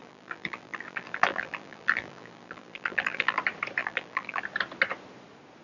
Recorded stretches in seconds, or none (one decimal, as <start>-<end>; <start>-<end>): 3.4-3.8; 4.4-5.6